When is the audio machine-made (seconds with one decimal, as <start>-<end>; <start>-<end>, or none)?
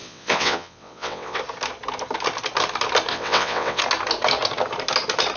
0.0-1.4; 3.1-3.8